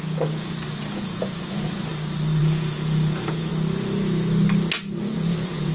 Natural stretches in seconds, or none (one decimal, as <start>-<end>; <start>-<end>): 1.9-2.4; 3.5-5.0